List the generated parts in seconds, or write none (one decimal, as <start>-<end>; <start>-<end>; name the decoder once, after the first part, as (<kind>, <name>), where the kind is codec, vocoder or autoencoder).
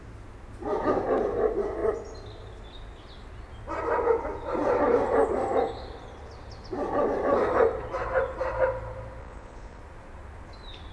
9.2-9.8 (vocoder, Vocos)